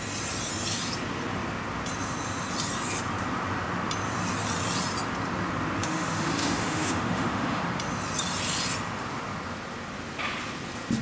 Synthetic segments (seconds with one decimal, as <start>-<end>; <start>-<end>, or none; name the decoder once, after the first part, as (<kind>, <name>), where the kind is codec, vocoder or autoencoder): 5.8-7.6 (autoencoder, DAC-VAE)